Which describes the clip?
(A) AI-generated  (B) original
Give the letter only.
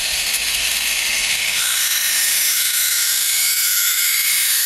A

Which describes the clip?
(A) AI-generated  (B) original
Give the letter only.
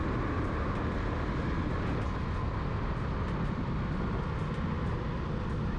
B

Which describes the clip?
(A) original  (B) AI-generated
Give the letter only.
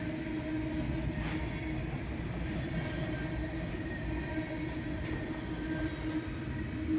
A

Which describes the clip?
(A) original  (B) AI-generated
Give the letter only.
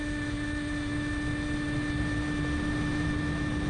A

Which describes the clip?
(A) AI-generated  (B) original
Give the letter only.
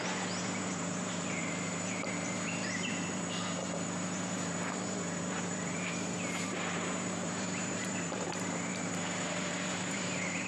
A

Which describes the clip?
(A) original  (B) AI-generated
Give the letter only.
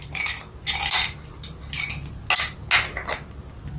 A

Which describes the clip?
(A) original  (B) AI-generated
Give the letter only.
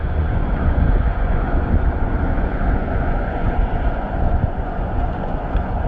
B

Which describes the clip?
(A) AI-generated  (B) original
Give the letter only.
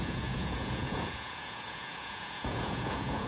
A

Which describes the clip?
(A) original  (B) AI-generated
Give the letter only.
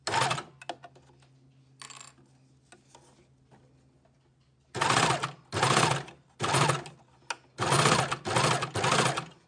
A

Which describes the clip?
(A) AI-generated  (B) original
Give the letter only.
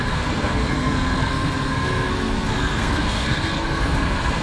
A